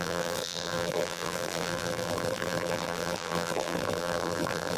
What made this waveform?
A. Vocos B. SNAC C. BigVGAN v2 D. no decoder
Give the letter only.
C